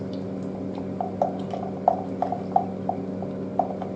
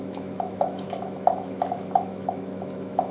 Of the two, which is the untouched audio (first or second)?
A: first